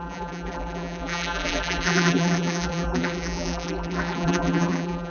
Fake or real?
fake